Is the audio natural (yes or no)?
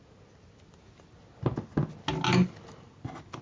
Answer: yes